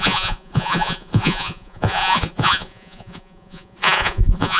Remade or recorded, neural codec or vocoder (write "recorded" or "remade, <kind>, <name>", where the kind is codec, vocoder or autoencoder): remade, vocoder, Vocos